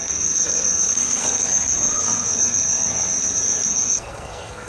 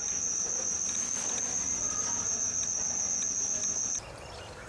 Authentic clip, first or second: second